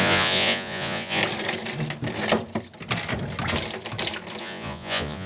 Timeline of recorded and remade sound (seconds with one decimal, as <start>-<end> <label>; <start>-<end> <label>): 0.0-1.2 remade; 1.2-4.4 recorded; 4.4-5.3 remade